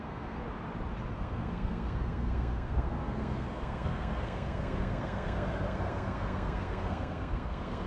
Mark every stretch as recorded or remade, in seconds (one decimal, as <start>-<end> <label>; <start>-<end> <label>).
0.0-0.4 remade; 0.4-1.1 recorded; 1.1-7.9 remade